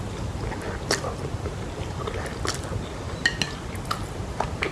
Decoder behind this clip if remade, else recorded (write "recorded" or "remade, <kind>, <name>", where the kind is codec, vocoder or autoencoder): recorded